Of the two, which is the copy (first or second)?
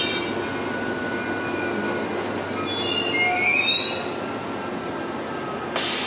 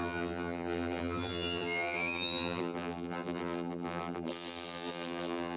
second